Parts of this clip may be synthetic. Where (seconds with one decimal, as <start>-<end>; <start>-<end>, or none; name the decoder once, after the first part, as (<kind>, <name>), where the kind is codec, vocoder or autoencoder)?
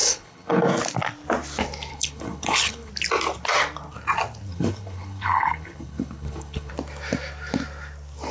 0.0-0.6 (codec, HILCodec); 1.9-2.9; 4.5-6.7